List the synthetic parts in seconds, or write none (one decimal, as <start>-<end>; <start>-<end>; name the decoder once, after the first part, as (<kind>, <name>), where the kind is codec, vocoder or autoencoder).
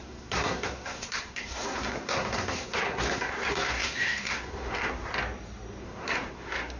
0.0-5.1 (codec, SNAC); 5.8-6.8